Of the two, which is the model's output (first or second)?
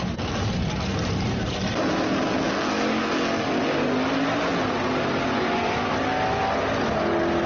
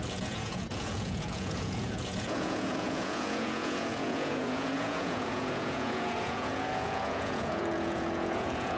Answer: second